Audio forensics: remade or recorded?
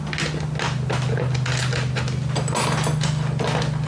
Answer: recorded